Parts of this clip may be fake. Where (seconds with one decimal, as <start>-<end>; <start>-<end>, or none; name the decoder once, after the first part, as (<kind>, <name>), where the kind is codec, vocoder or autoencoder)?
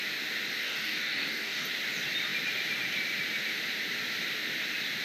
0.6-1.7 (codec, DAC)